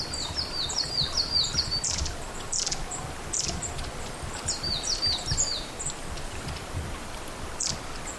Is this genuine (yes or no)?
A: no